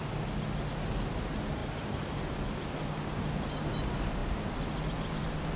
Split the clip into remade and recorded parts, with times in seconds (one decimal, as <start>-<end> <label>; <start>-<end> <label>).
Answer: 0.0-5.6 recorded